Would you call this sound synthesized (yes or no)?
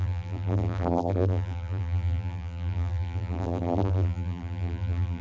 yes